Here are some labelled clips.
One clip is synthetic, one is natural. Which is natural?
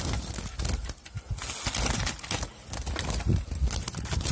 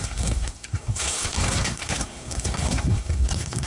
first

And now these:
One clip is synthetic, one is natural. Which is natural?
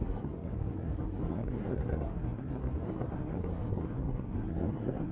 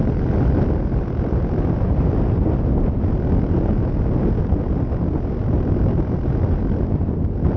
second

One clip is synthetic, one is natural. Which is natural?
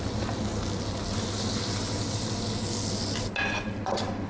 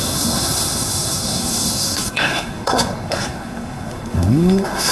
first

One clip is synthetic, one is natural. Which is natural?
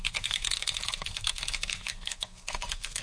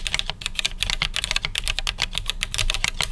second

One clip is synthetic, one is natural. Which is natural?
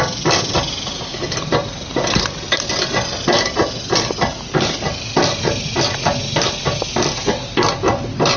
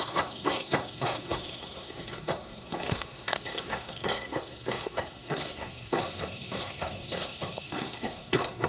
first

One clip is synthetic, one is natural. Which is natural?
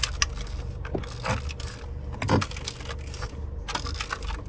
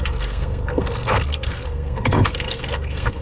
first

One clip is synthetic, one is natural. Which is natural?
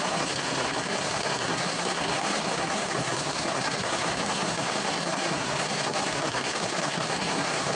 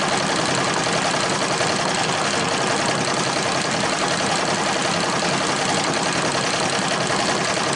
second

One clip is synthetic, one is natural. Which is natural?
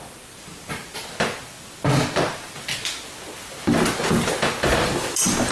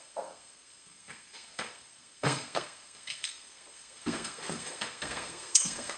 first